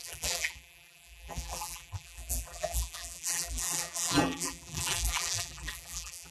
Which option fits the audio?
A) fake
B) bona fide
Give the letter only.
A